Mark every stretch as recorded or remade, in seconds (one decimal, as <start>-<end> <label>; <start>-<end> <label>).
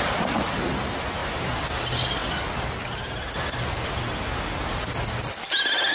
0.0-5.9 recorded